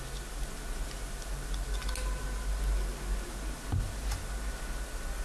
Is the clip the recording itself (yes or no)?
yes